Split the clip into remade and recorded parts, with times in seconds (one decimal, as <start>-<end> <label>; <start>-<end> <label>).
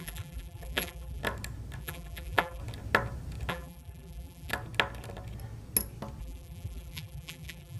0.0-1.2 remade; 1.2-1.8 recorded; 1.8-2.6 remade; 2.6-3.5 recorded; 3.5-4.5 remade; 4.5-6.2 recorded; 6.2-7.8 remade